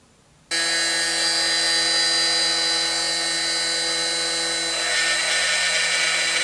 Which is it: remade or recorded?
recorded